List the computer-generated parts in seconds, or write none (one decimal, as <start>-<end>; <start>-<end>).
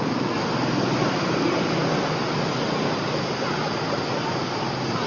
none